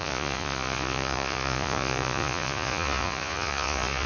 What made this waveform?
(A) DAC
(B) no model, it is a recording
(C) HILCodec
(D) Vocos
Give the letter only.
D